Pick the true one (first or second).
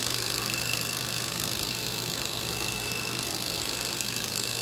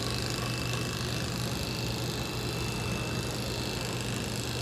second